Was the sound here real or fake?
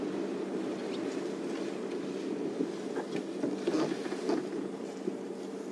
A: real